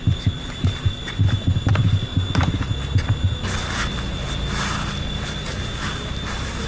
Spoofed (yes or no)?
no